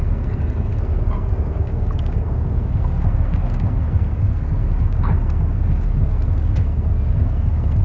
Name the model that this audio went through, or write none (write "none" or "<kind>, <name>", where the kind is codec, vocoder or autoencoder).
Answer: codec, SNAC